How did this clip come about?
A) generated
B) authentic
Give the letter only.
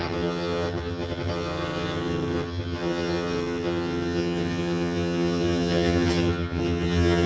A